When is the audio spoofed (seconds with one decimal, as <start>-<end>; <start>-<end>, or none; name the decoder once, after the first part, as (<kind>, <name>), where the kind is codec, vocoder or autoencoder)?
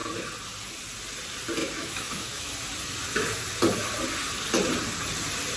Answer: 1.6-2.5 (autoencoder, DAC-VAE)